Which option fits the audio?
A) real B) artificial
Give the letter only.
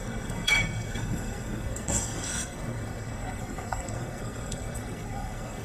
B